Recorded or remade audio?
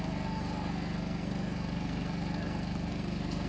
remade